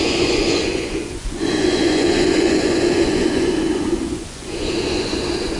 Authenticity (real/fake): fake